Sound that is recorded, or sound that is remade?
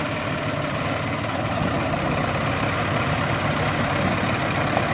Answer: recorded